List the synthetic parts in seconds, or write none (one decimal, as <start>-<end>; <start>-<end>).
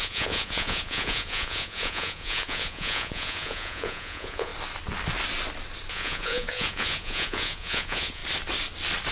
0.0-4.5; 5.9-8.2